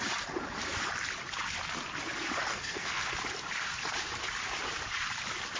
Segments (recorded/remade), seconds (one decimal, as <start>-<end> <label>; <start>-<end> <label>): 0.0-2.5 recorded; 2.5-3.1 remade; 3.1-5.6 recorded